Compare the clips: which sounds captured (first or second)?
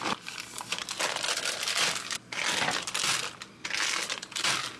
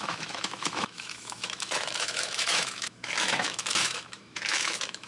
first